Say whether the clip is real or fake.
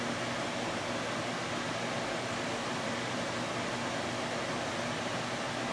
real